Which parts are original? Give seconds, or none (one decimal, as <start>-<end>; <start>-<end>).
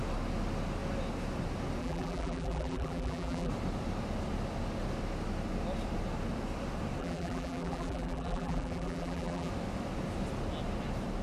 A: 0.0-1.8; 3.5-7.0; 9.5-11.2